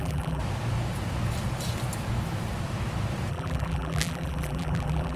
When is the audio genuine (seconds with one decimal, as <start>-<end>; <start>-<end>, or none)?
0.4-3.3